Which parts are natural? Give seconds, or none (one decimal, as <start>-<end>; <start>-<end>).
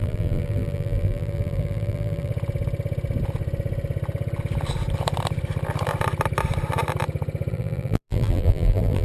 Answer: 2.3-7.5